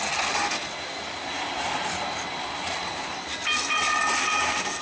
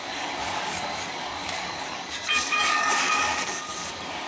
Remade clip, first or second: second